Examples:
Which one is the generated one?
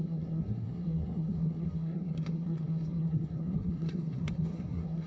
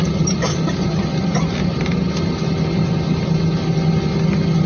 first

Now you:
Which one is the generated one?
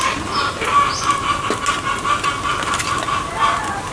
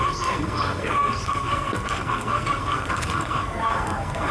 second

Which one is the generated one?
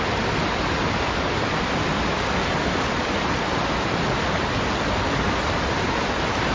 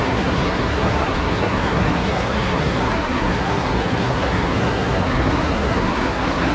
second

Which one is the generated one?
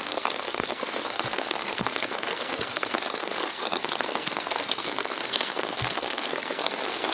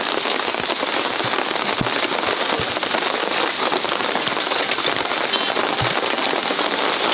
first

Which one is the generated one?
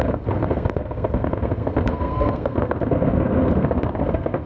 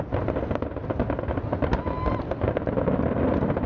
first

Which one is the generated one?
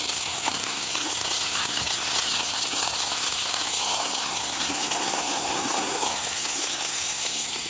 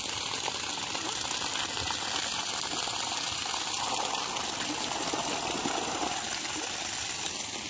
first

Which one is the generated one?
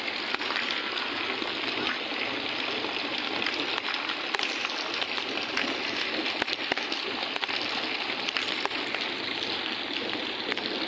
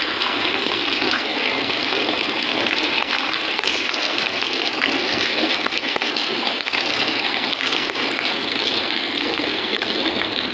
second